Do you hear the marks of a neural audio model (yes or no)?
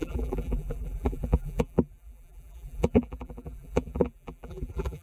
yes